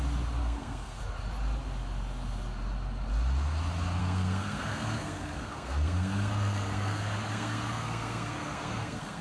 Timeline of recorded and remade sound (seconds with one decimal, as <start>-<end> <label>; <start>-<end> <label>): 0.0-0.4 recorded; 0.4-1.0 remade; 1.0-4.0 recorded; 4.0-9.2 remade